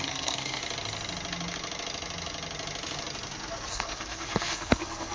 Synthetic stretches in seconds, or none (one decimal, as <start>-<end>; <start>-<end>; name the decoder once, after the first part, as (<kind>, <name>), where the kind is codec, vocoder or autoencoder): 0.0-0.6 (codec, SNAC); 3.7-5.1